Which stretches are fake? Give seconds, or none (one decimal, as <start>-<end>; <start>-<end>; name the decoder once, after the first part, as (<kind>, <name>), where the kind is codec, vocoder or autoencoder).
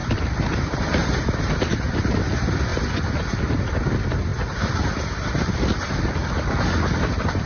0.0-1.9 (vocoder, BigVGAN v2); 4.3-5.9